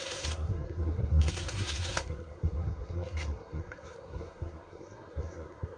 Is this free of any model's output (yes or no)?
no